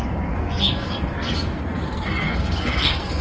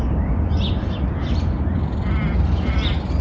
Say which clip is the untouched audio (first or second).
second